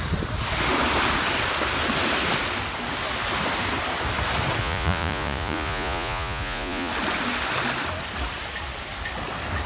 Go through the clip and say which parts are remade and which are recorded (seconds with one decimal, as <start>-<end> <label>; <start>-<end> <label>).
0.0-4.6 recorded; 4.6-6.9 remade; 6.9-9.7 recorded